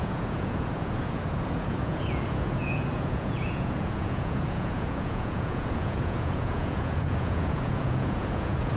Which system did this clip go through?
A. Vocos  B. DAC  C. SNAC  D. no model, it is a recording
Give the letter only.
A